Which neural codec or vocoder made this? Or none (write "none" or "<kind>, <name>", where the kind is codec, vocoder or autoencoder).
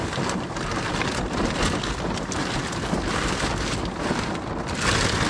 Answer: none